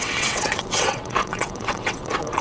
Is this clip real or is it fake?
fake